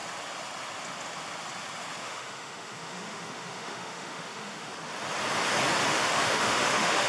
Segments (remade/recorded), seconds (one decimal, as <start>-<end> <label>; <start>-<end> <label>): 0.0-2.0 recorded; 2.0-4.7 remade; 4.7-5.9 recorded; 5.9-7.1 remade